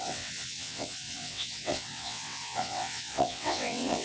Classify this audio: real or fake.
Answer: fake